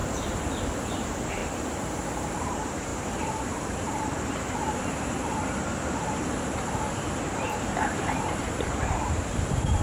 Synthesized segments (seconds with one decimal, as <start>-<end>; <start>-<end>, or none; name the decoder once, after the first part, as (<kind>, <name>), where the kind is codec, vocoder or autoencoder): 0.9-1.4 (vocoder, BigVGAN v2); 2.2-9.8